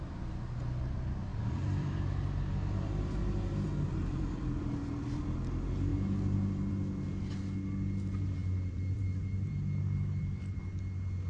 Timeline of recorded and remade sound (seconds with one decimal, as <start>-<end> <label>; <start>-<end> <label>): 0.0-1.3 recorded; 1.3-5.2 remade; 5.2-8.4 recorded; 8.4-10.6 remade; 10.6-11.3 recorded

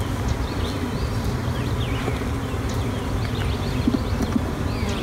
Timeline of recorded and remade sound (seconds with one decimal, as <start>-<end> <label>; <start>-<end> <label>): 0.0-5.0 recorded

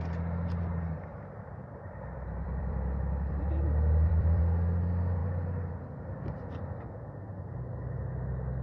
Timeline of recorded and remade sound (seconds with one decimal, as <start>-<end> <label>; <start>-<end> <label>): 0.0-1.1 recorded; 1.1-4.4 remade; 4.4-8.6 recorded

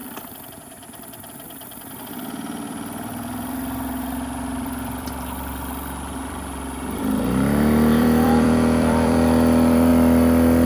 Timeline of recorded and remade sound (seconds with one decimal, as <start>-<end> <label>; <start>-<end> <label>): 0.0-9.9 remade; 9.9-10.7 recorded

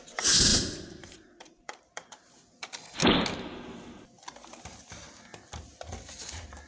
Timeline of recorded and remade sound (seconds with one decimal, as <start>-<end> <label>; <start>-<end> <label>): 0.0-0.5 recorded; 0.5-2.8 remade; 2.8-6.7 recorded